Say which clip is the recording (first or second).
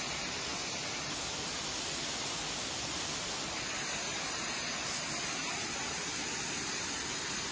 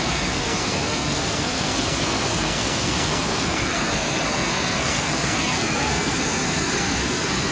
first